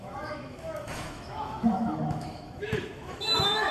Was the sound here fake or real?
fake